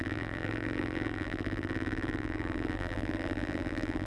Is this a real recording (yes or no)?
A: no